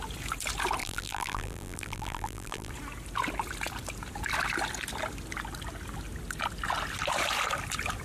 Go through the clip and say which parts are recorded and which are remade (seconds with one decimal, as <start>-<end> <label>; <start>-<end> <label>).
0.0-0.8 recorded; 0.8-2.7 remade; 2.7-8.0 recorded